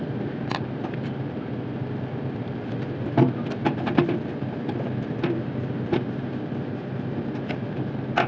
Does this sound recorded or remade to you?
remade